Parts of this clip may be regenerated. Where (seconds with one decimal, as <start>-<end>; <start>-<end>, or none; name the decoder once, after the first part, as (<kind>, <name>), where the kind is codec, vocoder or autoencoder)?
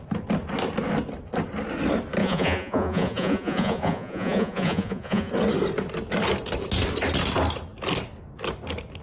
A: 2.2-5.3 (vocoder, Vocos)